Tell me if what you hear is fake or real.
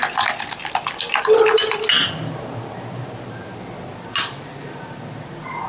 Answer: real